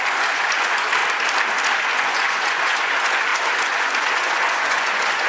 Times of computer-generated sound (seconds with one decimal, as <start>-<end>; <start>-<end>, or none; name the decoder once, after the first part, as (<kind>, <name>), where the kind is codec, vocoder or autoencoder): 0.0-1.0 (vocoder, Vocos); 1.8-5.3